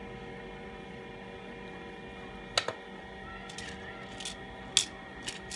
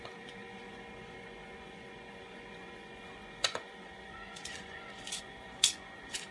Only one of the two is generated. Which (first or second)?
second